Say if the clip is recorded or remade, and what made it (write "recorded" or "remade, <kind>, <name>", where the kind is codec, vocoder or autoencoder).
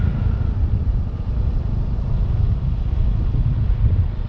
recorded